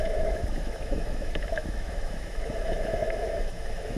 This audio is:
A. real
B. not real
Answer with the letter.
B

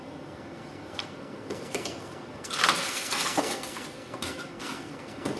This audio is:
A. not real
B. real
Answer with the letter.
A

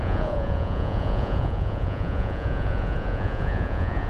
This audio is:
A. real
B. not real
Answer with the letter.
B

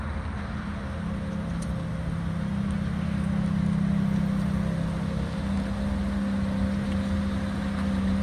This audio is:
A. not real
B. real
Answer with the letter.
B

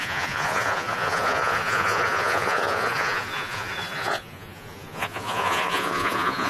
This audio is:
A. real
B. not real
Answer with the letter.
B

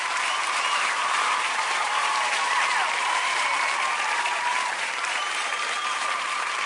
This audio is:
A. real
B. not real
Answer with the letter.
B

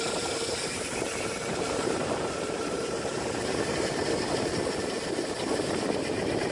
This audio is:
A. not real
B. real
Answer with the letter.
A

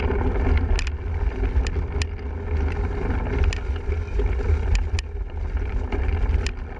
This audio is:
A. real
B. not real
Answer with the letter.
A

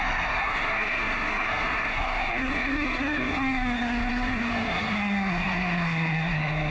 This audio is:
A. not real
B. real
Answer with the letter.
A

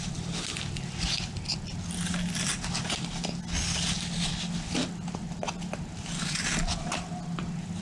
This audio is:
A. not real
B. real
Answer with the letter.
B